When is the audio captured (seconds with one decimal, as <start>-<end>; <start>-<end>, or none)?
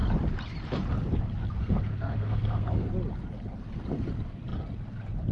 0.0-1.6; 2.9-5.3